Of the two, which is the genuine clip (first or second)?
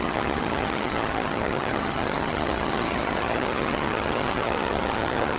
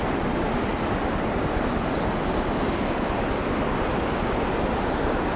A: second